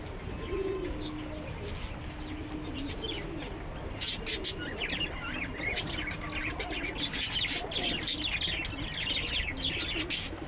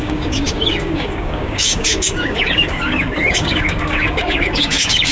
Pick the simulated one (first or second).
second